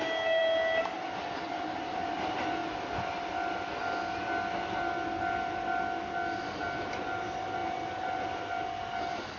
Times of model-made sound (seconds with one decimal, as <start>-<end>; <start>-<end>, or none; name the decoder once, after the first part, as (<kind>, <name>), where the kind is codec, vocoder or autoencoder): none

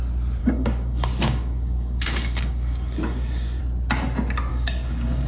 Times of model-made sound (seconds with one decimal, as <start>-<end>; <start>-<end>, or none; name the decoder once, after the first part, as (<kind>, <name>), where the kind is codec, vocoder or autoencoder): 0.4-3.6 (codec, DAC); 4.5-5.3

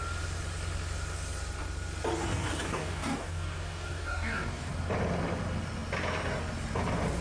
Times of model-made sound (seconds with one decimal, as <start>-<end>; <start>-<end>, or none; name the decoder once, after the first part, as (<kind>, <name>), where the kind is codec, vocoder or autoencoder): 2.3-4.7 (codec, DAC)

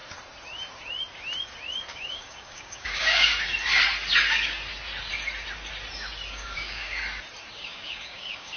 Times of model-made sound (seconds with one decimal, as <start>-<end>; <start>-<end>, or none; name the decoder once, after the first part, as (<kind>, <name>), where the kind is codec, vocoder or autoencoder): 1.9-3.3 (codec, DAC); 6.3-7.0; 7.5-8.6

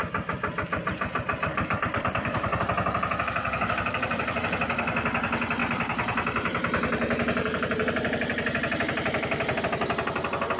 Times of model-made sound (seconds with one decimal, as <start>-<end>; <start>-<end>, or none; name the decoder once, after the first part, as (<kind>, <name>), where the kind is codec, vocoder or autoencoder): 1.5-2.6 (codec, DAC); 3.4-4.4